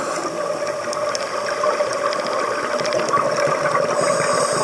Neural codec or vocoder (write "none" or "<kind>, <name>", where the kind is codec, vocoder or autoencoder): none